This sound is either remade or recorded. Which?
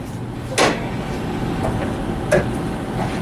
recorded